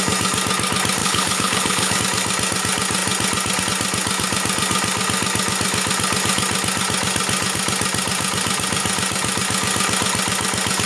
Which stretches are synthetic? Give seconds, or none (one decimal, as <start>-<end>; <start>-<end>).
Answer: 1.0-2.0